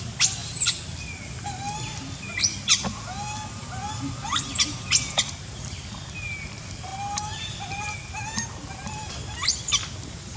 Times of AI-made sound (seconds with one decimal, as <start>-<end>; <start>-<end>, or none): 0.4-4.9